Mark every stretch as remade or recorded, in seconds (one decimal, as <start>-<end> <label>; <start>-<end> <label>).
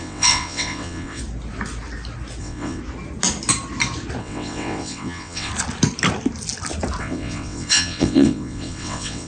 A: 0.0-1.2 remade; 1.2-2.4 recorded; 2.4-2.8 remade; 2.8-4.2 recorded; 4.2-5.5 remade; 5.5-7.0 recorded; 7.0-9.3 remade